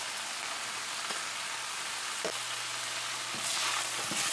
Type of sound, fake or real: real